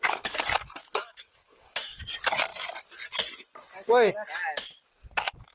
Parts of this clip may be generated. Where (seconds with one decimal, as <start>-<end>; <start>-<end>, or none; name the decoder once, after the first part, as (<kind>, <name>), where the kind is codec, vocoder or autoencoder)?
0.8-2.0 (autoencoder, DAC-VAE)